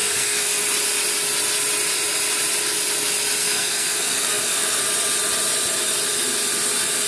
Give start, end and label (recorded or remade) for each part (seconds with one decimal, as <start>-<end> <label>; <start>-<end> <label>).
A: 0.0-0.6 remade; 0.6-3.4 recorded; 3.4-4.8 remade; 4.8-7.1 recorded